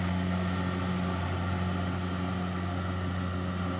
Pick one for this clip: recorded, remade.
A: recorded